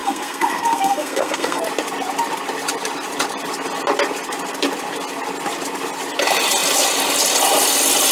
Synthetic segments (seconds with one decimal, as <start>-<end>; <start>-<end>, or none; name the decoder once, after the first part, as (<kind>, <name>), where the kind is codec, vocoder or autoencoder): 0.0-1.6 (codec, SNAC)